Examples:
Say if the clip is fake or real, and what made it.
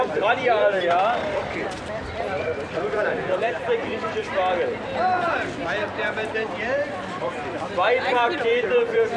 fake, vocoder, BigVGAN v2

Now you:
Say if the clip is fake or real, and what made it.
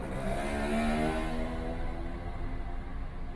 real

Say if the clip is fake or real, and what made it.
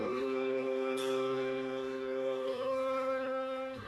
fake, codec, SNAC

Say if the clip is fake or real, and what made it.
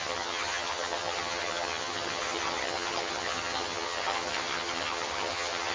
fake, vocoder, HiFi-GAN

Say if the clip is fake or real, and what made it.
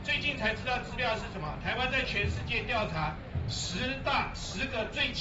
real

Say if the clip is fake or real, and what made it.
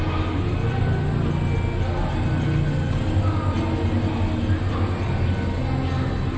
real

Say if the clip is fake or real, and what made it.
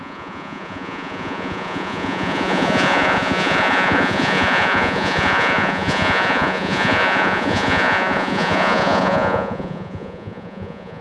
fake, vocoder, Vocos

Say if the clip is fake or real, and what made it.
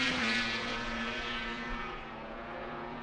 fake, vocoder, Vocos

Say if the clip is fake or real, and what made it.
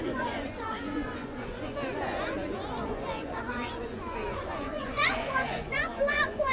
fake, vocoder, Vocos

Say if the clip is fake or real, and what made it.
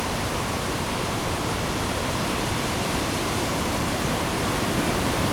fake, vocoder, BigVGAN v2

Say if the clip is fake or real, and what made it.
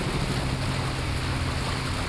real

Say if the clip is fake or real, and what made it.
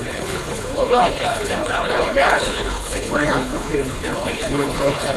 fake, codec, HILCodec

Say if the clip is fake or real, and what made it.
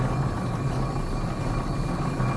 real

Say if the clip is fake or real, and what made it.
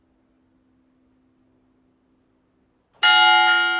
real